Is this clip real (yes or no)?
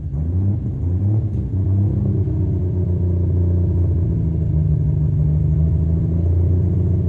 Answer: yes